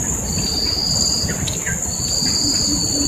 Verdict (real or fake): real